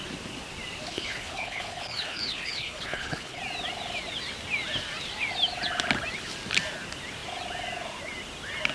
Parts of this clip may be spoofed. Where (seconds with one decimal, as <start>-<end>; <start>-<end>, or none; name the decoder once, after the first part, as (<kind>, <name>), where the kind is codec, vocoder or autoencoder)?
0.9-3.4 (codec, HILCodec)